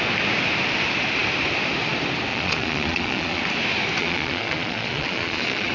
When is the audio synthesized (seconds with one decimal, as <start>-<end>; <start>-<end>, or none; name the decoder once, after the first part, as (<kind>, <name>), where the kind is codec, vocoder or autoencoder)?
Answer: 2.3-3.4 (vocoder, Vocos); 4.0-5.7